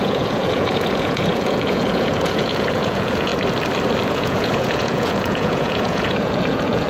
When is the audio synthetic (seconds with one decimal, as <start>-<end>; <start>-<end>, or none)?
0.0-3.3; 4.1-6.9